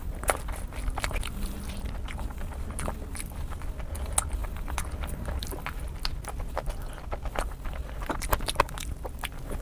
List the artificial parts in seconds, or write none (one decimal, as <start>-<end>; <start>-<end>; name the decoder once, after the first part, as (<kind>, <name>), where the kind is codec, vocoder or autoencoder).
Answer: 4.4-5.5 (vocoder, BigVGAN v2)